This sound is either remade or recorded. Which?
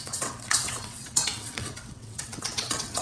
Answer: remade